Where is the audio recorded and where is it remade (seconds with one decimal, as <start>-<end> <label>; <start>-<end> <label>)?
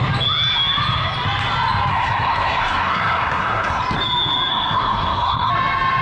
0.0-1.9 recorded; 1.9-3.8 remade; 3.8-4.5 recorded; 4.5-5.5 remade; 5.5-6.0 recorded